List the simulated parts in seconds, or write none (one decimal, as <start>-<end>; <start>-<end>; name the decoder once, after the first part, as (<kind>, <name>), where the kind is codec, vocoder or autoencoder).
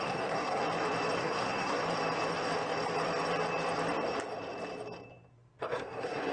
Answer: 0.0-0.6 (codec, SNAC); 1.2-1.8; 5.6-6.3